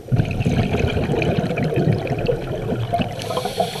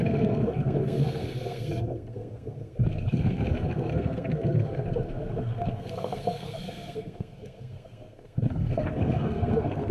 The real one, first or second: first